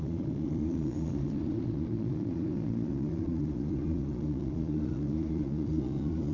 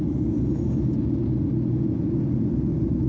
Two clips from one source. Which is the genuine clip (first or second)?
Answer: second